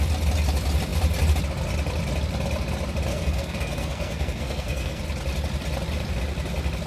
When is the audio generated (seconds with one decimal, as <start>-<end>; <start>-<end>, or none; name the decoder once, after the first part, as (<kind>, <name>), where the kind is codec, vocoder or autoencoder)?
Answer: 3.1-5.0 (codec, SNAC)